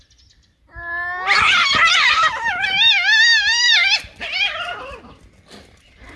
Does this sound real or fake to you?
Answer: real